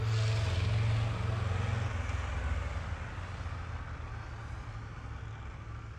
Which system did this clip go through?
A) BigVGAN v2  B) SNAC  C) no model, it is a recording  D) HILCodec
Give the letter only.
C